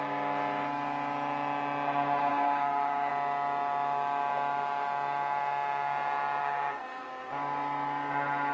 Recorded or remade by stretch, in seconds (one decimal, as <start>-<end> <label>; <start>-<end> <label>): 0.0-2.3 recorded; 2.3-3.1 remade; 3.1-6.4 recorded; 6.4-7.3 remade; 7.3-8.5 recorded